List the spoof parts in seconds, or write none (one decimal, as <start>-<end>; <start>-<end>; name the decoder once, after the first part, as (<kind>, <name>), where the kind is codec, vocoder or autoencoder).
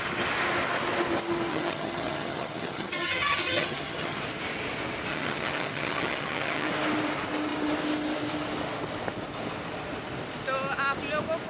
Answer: 1.5-4.2 (vocoder, HiFi-GAN); 5.1-6.7